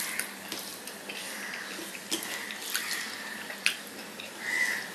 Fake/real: real